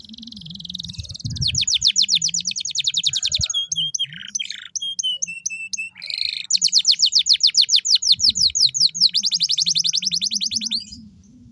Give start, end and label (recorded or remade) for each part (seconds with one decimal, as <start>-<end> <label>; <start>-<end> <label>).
0.0-11.5 recorded